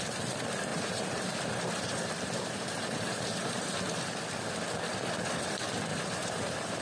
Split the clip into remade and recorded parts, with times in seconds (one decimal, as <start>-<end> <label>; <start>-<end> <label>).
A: 0.0-0.7 recorded; 0.7-3.7 remade; 3.7-5.9 recorded; 5.9-6.8 remade